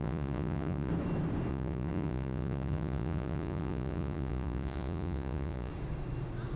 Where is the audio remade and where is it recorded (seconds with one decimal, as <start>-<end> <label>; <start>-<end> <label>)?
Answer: 0.0-0.9 remade; 0.9-1.5 recorded; 1.5-5.7 remade; 5.7-6.6 recorded